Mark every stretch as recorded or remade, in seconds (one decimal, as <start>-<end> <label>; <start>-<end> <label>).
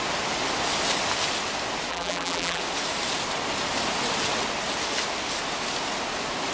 0.0-1.9 recorded; 1.9-2.6 remade; 2.6-6.5 recorded